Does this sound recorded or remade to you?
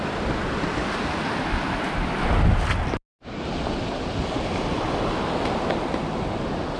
recorded